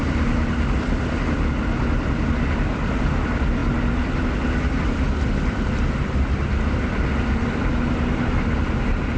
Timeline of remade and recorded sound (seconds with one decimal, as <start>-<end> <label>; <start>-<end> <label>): 0.0-9.2 recorded